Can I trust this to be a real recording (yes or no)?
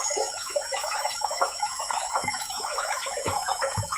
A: no